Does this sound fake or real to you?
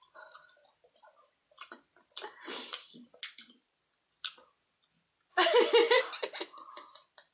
real